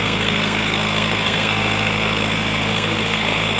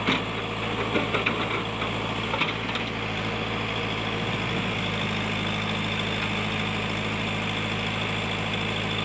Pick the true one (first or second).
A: second